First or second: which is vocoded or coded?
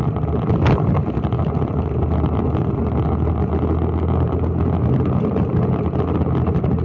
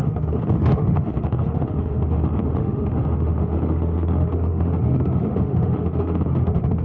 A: second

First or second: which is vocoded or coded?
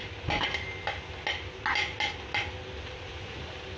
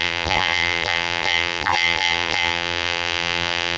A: second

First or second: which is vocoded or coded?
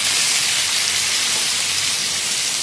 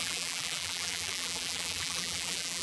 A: second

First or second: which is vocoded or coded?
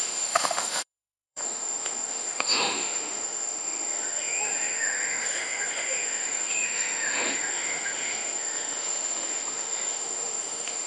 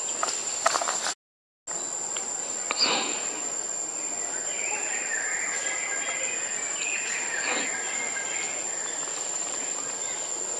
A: first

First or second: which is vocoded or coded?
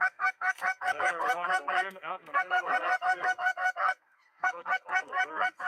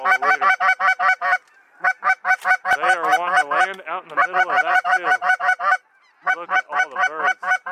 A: first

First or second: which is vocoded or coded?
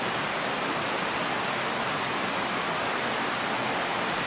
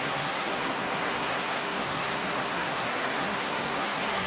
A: second